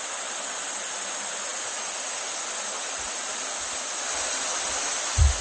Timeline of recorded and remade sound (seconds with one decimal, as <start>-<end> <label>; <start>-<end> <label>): 0.0-5.4 recorded